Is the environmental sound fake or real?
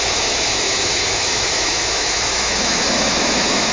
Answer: fake